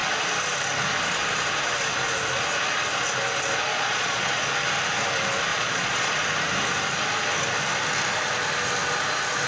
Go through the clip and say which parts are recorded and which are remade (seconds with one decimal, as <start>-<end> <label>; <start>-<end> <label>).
0.0-3.7 recorded; 3.7-4.5 remade; 4.5-5.5 recorded; 5.5-6.1 remade; 6.1-9.5 recorded